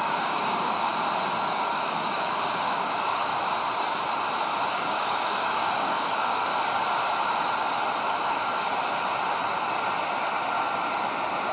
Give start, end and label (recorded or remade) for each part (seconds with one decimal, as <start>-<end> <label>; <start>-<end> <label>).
0.0-0.9 remade; 0.9-1.5 recorded; 1.5-3.3 remade; 3.3-4.7 recorded; 4.7-6.5 remade; 6.5-11.5 recorded